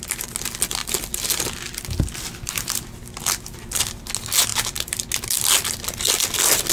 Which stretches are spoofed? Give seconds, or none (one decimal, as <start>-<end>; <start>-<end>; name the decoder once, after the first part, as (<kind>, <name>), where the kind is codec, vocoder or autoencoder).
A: none